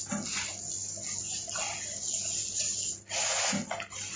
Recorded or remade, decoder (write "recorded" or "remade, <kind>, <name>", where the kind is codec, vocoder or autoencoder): recorded